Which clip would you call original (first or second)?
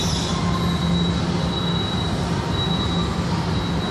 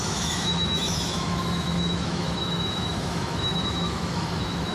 first